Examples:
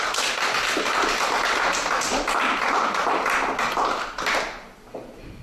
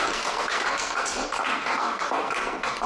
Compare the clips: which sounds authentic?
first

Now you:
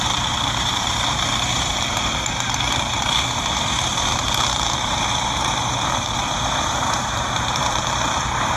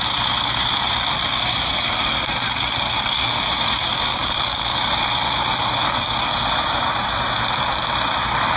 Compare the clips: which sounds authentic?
second